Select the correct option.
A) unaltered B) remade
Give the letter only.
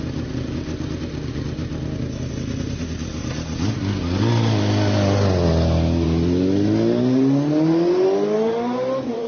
A